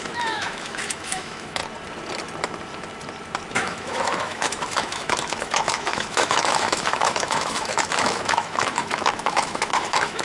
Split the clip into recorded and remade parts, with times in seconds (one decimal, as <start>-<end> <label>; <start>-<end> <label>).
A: 0.0-1.6 remade; 1.6-3.5 recorded; 3.5-10.2 remade